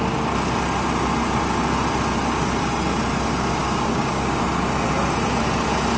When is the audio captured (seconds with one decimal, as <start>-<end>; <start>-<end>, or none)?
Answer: 0.0-3.6; 4.4-6.0